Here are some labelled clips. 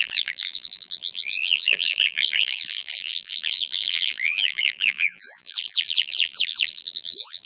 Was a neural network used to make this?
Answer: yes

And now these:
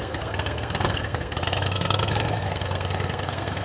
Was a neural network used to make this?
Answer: yes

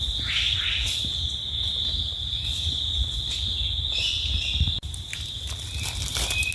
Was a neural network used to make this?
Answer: no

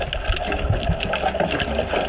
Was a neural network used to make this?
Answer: no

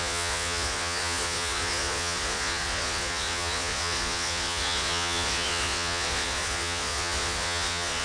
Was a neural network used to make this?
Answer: yes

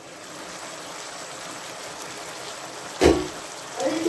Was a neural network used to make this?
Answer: no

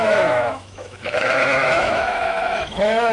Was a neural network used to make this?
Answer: yes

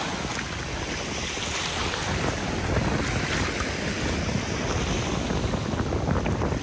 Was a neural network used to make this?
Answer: no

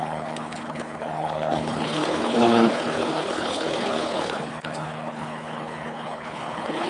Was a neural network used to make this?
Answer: yes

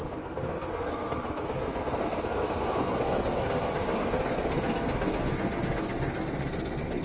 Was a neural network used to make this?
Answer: yes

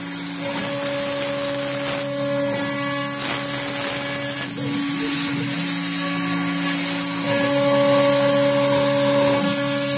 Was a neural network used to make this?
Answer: no